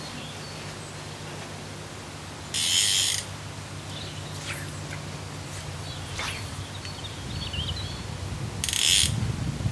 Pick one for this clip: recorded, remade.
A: recorded